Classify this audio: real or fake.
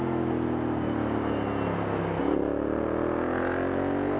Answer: real